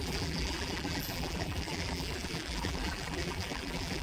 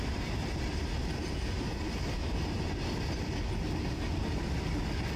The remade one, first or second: first